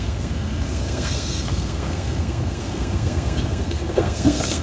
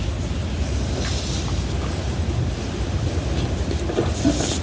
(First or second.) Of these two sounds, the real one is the second